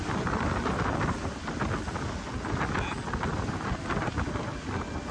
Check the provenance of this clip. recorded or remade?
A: recorded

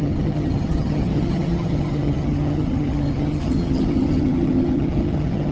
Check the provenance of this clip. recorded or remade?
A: remade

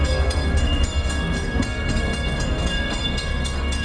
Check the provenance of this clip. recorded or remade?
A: remade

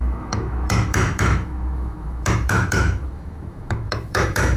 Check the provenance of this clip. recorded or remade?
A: remade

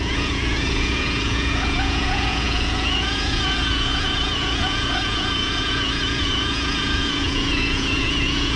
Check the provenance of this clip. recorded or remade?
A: remade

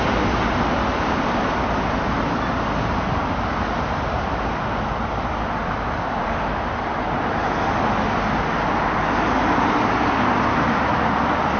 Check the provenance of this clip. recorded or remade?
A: recorded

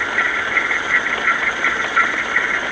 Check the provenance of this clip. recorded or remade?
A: recorded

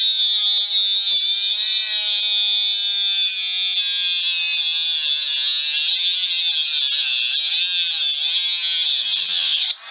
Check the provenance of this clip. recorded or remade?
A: recorded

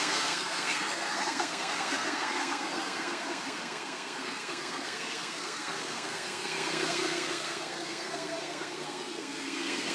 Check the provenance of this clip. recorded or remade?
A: remade